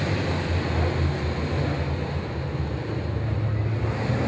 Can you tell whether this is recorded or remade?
recorded